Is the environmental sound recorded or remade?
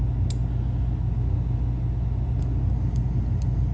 recorded